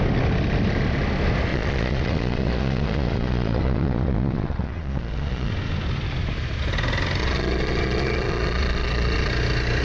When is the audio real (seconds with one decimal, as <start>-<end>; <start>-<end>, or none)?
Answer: 0.0-1.5; 5.5-7.2; 9.3-9.8